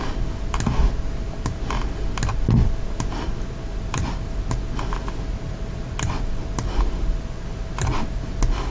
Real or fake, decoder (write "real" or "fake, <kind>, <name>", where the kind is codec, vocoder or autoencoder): real